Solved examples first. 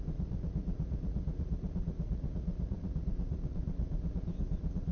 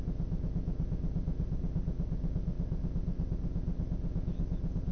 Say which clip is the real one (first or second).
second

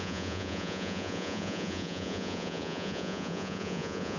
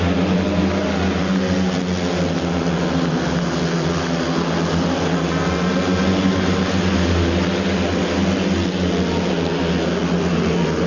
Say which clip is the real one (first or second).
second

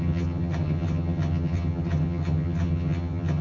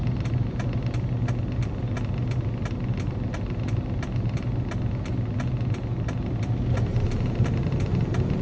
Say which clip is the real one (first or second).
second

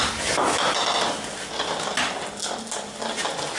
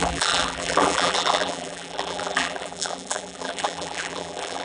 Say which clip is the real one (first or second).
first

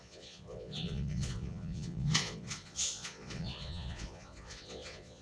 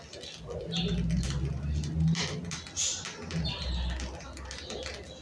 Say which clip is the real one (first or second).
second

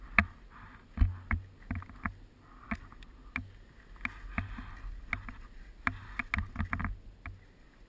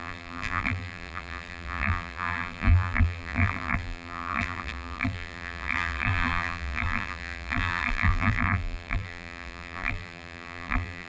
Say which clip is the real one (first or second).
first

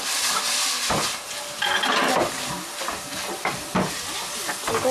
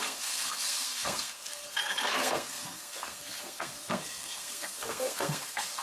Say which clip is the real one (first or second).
first